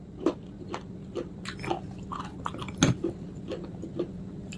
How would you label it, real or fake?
real